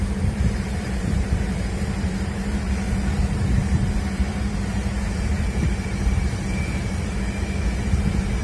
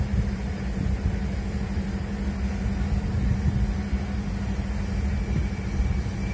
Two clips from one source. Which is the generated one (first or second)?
first